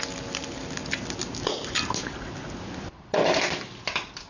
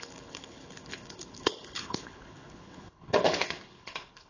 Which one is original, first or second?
first